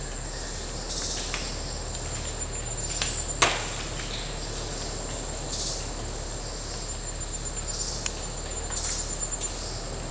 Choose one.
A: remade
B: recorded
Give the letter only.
B